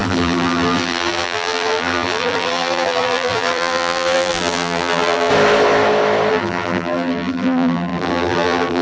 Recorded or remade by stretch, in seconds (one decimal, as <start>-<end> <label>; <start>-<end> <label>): 0.0-5.3 remade; 5.3-6.3 recorded; 6.3-8.8 remade